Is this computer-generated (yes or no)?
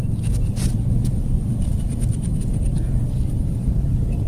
yes